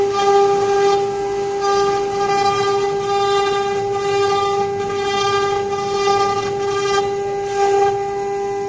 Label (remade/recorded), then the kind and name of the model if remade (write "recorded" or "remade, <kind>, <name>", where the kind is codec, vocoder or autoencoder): recorded